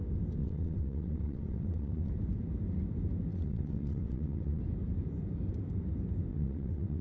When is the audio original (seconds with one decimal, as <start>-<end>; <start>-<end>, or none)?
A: 0.0-0.4; 2.1-3.3; 4.6-6.3